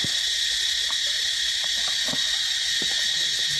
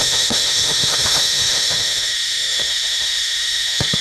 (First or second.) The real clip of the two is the first